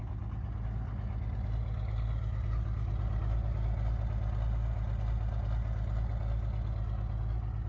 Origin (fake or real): real